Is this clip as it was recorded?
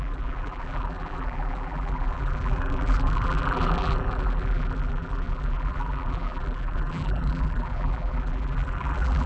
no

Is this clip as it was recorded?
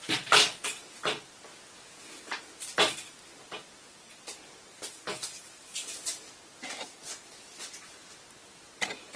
yes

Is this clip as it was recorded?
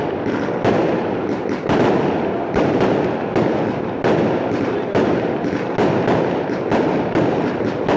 yes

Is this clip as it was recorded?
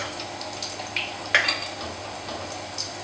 yes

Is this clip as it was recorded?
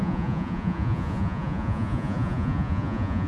no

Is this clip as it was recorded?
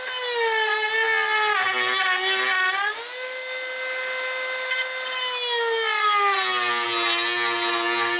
yes